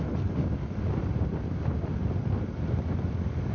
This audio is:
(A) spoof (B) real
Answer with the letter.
B